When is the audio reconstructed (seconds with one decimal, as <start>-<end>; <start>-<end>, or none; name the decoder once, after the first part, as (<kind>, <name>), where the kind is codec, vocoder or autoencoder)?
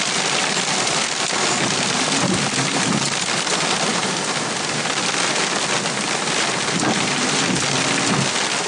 none